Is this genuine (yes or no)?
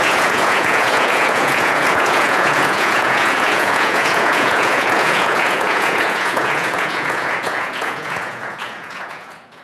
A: no